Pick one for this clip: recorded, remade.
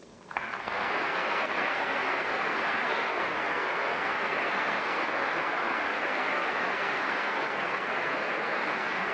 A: remade